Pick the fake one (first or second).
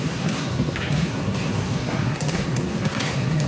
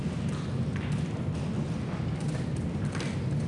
first